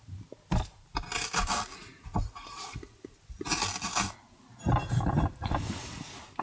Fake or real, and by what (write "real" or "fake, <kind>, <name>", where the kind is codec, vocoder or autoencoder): real